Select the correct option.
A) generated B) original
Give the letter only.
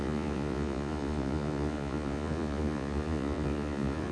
A